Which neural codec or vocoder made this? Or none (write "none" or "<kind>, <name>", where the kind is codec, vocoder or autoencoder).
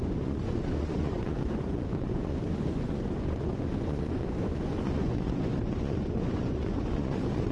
vocoder, Vocos